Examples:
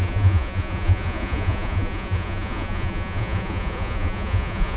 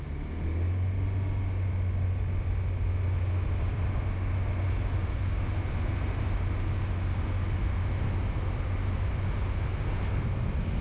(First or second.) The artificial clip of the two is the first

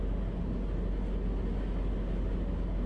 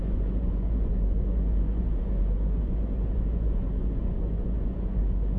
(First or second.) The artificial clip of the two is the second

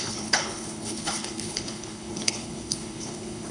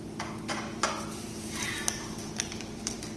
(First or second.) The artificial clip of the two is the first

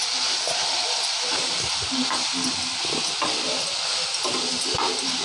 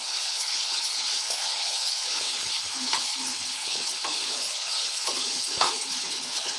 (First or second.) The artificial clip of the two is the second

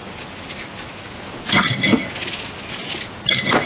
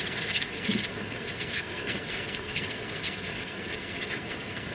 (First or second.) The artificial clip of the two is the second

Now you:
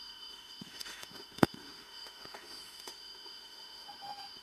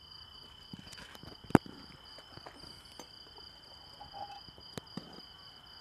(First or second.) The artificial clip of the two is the first